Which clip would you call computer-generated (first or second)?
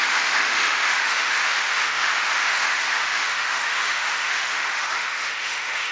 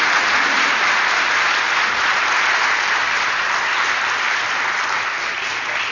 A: first